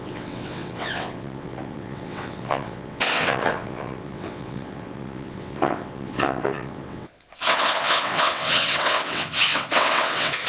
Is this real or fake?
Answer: fake